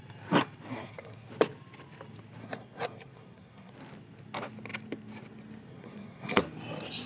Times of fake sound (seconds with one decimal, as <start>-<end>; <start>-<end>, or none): 0.7-1.3; 2.4-3.7; 5.7-6.4

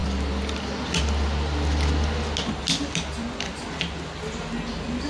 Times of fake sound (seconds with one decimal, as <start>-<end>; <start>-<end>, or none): none

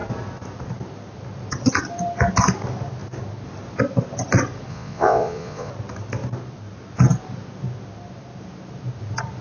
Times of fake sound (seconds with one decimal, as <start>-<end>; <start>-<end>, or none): 4.7-5.7

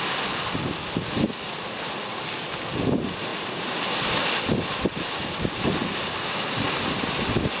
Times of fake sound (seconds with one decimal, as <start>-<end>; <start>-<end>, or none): none